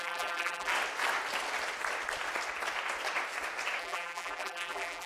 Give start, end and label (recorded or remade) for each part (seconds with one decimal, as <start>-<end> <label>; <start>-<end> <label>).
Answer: 0.0-0.7 remade; 0.7-3.8 recorded; 3.8-5.1 remade

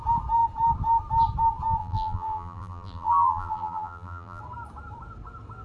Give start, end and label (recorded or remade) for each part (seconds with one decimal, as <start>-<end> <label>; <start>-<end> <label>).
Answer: 0.0-1.8 recorded; 1.8-4.4 remade; 4.4-5.6 recorded

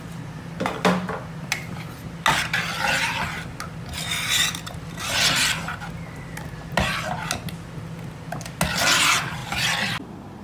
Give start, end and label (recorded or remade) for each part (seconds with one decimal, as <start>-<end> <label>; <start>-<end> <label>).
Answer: 0.0-10.4 recorded

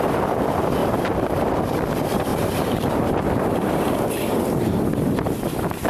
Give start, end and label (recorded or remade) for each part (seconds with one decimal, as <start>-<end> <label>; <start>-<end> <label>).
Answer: 0.0-0.8 recorded; 0.8-1.4 remade; 1.4-2.3 recorded; 2.3-3.8 remade; 3.8-5.9 recorded

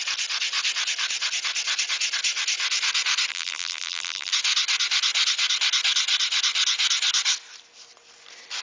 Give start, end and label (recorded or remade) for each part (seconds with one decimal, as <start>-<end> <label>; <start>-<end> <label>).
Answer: 0.0-3.3 recorded; 3.3-4.3 remade; 4.3-8.6 recorded